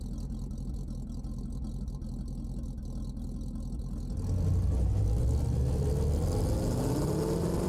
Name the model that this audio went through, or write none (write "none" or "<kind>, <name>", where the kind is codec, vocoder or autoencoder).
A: none